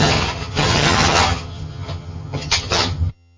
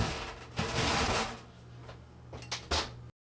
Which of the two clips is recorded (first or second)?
second